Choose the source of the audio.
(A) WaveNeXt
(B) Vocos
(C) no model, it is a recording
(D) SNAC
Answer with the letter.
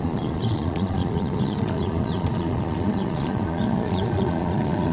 B